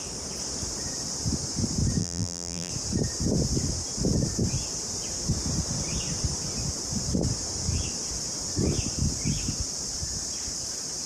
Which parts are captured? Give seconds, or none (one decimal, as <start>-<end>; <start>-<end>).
0.0-2.0; 2.7-11.1